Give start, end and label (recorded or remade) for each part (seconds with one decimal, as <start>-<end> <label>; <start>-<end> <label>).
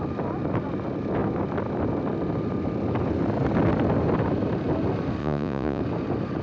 0.0-5.2 recorded; 5.2-5.8 remade; 5.8-6.4 recorded